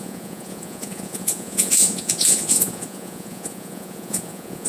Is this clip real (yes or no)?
no